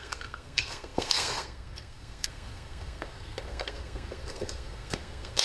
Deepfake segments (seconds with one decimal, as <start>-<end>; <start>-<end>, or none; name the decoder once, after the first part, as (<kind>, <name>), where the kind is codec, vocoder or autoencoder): 0.0-5.4 (codec, SNAC)